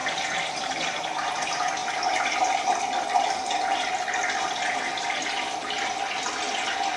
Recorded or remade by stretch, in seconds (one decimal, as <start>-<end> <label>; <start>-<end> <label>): 0.0-1.8 recorded; 1.8-6.0 remade; 6.0-7.0 recorded